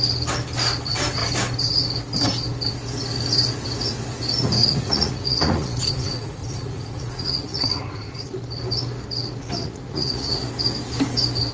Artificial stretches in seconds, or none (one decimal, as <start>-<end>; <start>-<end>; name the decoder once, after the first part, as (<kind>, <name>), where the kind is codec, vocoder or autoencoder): 4.6-8.4 (vocoder, Vocos); 9.4-10.5